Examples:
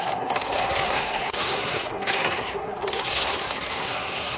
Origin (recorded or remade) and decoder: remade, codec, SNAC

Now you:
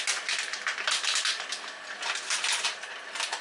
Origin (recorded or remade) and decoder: recorded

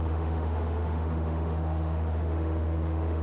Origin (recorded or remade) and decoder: remade, autoencoder, DAC-VAE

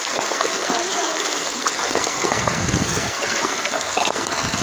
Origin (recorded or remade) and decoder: remade, codec, SNAC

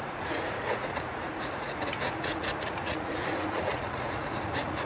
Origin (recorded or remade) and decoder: remade, vocoder, Vocos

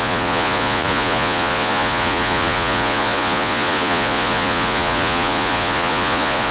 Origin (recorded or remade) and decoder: remade, vocoder, Vocos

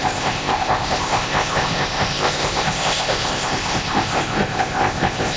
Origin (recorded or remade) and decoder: remade, codec, ZipCodec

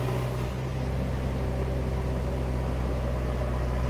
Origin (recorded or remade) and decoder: recorded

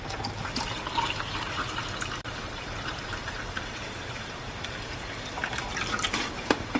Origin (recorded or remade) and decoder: remade, vocoder, BigVGAN v2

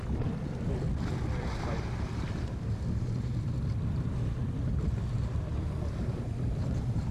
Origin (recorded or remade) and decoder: remade, vocoder, BigVGAN v2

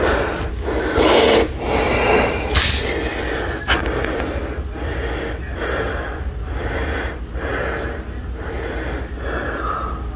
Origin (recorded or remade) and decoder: recorded